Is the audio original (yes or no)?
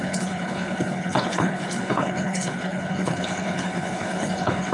no